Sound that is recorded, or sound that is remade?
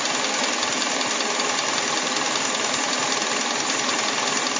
recorded